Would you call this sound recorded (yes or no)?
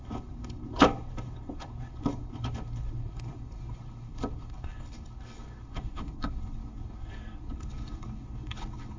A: no